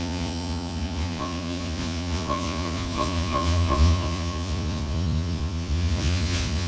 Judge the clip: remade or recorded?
remade